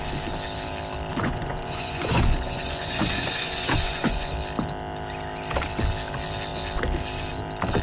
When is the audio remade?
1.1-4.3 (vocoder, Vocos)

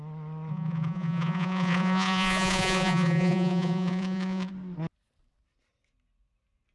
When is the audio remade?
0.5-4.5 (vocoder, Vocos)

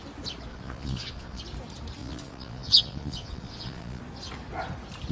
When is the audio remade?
0.5-1.4 (vocoder, Vocos); 2.0-4.0